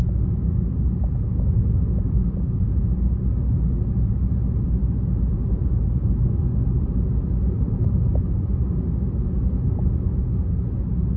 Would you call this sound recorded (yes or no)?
yes